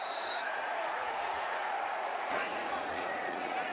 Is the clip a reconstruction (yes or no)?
yes